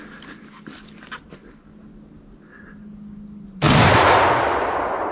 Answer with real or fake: real